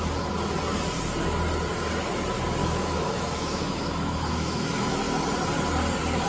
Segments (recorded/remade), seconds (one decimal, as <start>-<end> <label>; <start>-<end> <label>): 0.0-2.6 recorded; 2.6-5.0 remade; 5.0-6.3 recorded